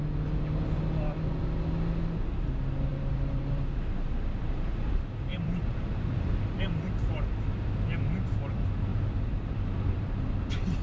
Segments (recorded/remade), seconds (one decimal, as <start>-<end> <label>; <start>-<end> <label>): 0.0-2.9 recorded; 2.9-7.4 remade; 7.4-8.9 recorded; 8.9-10.1 remade; 10.1-10.8 recorded